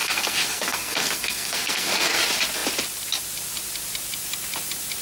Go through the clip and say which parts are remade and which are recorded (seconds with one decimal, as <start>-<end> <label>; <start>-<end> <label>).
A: 0.0-2.2 remade; 2.2-5.0 recorded